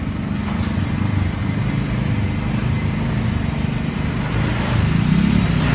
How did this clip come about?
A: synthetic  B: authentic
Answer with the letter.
B